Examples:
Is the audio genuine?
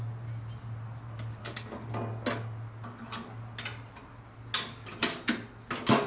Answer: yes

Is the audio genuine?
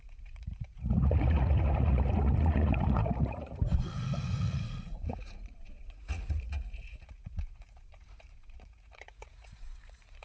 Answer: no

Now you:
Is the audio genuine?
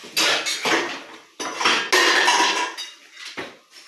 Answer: yes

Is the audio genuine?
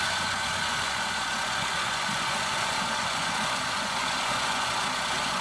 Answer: no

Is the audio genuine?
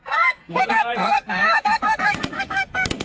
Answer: no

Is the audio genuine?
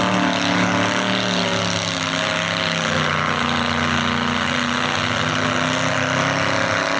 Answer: yes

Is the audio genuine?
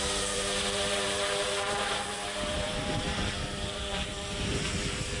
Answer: no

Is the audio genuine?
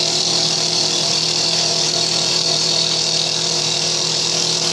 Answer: no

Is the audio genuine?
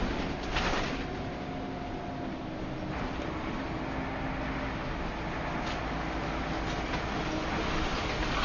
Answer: yes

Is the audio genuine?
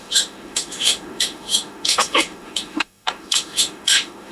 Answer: no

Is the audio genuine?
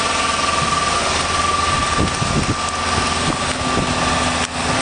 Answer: yes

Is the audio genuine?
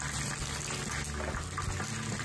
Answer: yes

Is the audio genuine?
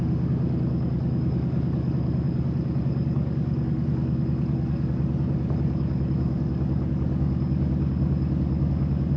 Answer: no